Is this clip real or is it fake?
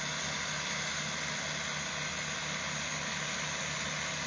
real